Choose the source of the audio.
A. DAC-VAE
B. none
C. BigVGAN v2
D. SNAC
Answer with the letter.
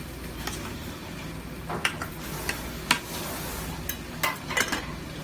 B